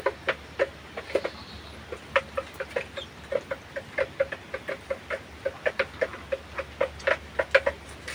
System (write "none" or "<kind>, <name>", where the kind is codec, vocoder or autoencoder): none